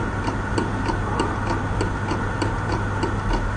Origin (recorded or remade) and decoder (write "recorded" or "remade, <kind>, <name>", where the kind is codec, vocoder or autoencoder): recorded